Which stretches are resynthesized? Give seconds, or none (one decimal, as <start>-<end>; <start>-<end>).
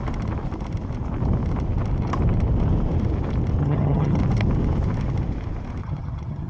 3.6-4.2; 5.8-6.5